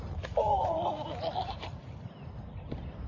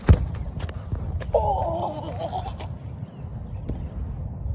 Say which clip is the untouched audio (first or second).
second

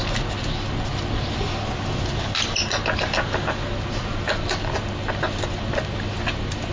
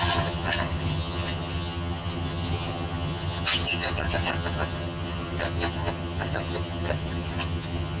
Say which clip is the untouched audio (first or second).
first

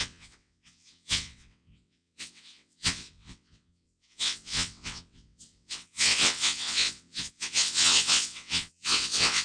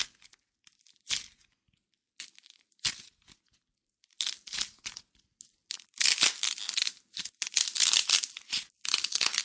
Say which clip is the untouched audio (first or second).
second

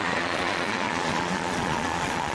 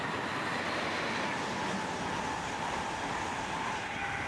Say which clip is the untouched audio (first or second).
second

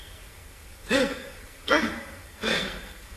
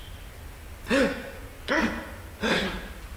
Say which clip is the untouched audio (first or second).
second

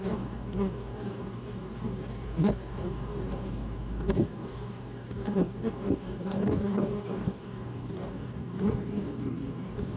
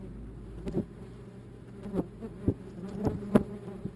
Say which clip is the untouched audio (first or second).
second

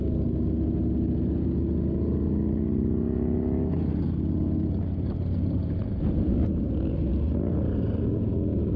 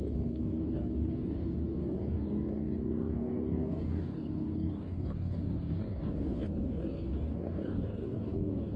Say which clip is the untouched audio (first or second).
first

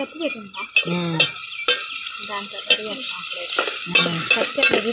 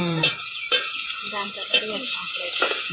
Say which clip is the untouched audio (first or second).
first